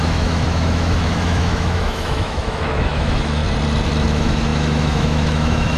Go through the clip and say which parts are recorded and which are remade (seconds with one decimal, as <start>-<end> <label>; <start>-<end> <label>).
0.0-3.4 remade; 3.4-4.1 recorded; 4.1-5.8 remade